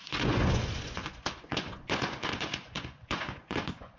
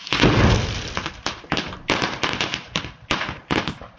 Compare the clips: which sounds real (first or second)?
second